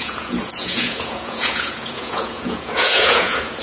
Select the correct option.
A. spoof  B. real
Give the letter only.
A